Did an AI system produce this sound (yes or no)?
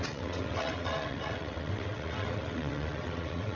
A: yes